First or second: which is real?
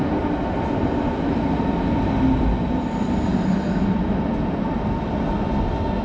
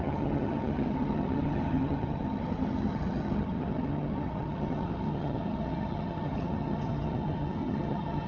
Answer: first